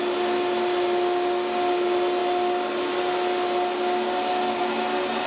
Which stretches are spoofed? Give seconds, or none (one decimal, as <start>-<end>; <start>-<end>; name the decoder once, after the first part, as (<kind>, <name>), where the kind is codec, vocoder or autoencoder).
none